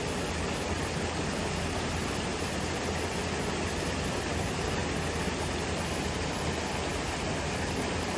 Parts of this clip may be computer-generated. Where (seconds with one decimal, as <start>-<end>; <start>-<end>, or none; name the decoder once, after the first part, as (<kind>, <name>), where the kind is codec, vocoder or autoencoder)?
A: none